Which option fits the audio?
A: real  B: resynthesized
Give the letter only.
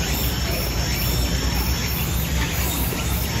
A